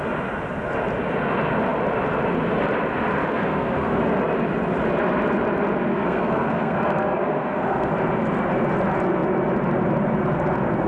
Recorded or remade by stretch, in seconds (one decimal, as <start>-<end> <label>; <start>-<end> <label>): 0.0-3.3 recorded; 3.3-4.0 remade; 4.0-5.9 recorded; 5.9-7.9 remade; 7.9-10.9 recorded